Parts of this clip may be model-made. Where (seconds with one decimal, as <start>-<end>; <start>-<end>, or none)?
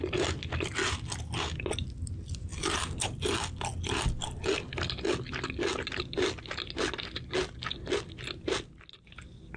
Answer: none